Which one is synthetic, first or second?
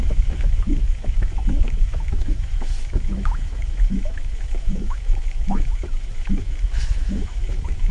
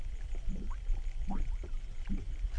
first